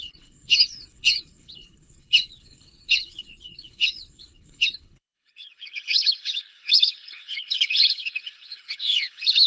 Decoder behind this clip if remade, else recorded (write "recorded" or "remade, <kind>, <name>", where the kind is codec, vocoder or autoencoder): remade, codec, HILCodec